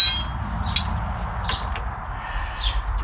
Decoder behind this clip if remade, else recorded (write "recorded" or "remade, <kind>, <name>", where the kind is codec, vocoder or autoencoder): recorded